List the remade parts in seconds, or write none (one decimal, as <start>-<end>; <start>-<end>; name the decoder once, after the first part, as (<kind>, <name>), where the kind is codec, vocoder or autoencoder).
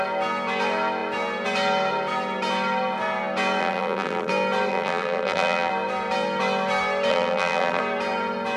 3.6-4.3 (vocoder, BigVGAN v2); 4.7-5.7; 7.1-7.8